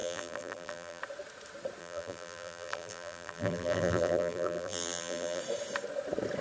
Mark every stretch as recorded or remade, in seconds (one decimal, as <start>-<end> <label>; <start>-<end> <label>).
0.0-1.0 remade; 1.0-1.8 recorded; 1.8-5.4 remade; 5.4-6.4 recorded